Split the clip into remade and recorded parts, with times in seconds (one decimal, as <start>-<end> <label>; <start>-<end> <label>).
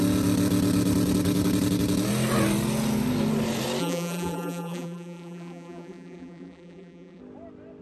0.0-3.8 recorded; 3.8-7.2 remade; 7.2-7.8 recorded